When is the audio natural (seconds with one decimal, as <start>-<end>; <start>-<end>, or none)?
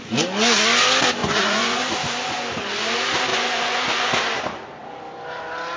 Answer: 0.0-1.2; 1.8-3.3; 4.1-5.8